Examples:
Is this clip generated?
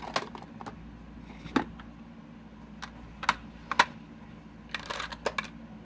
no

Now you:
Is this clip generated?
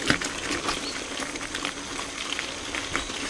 no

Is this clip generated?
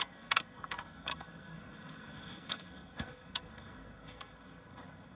yes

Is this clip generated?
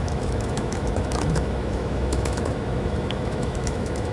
yes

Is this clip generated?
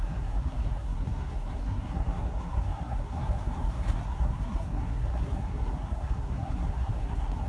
yes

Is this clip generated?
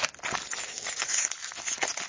no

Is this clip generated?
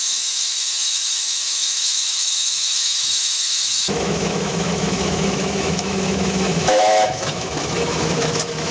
yes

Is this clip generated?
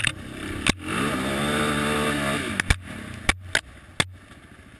no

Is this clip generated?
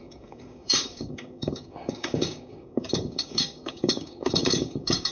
yes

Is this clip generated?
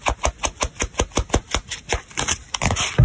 no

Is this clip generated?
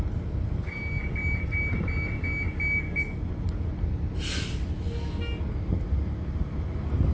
no